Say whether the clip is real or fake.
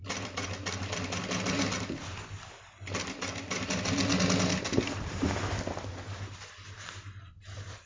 real